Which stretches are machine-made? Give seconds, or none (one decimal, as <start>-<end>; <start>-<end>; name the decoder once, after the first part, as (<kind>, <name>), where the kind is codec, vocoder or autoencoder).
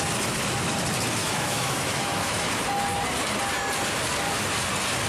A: 1.2-2.5 (autoencoder, DAC-VAE)